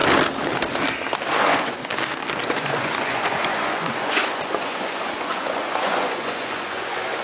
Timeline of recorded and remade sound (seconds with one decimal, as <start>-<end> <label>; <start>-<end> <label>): 0.0-1.4 recorded; 1.4-1.9 remade; 1.9-2.4 recorded; 2.4-7.2 remade